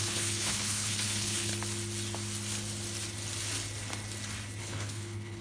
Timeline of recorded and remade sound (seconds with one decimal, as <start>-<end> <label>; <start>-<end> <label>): 0.0-1.5 remade; 1.5-4.6 recorded; 4.6-5.4 remade